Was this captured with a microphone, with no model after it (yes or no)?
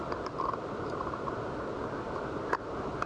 no